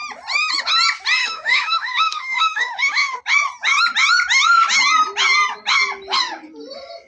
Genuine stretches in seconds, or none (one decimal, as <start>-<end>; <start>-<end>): 0.0-1.2; 3.2-7.1